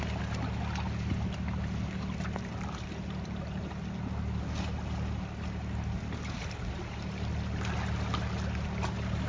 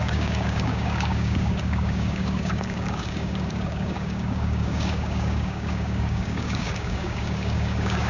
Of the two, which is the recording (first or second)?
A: first